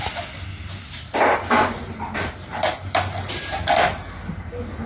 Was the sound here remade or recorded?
recorded